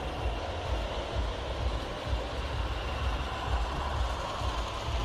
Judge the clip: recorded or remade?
recorded